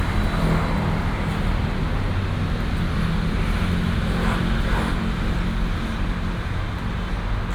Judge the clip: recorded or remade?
recorded